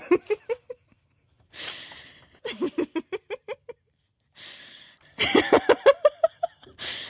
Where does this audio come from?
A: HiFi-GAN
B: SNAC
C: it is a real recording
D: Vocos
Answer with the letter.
C